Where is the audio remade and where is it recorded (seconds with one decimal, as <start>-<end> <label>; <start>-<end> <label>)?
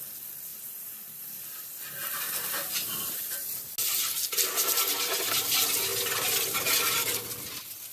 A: 0.0-7.9 recorded